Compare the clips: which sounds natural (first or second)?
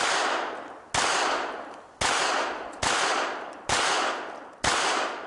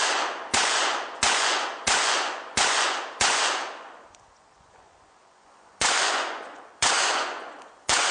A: first